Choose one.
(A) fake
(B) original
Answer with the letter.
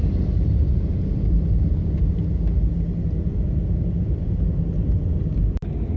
B